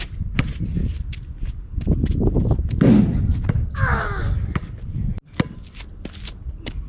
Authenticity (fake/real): real